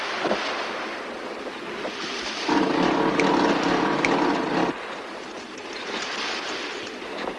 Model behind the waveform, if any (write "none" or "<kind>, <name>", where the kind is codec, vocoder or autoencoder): none